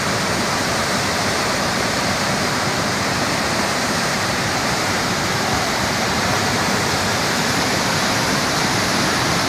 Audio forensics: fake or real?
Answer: fake